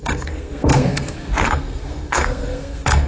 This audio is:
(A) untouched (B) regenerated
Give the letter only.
B